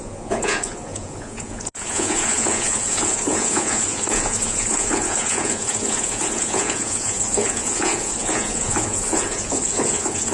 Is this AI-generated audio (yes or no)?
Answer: yes